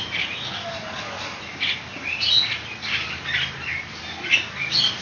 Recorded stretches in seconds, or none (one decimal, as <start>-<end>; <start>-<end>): 0.0-0.6; 1.4-5.0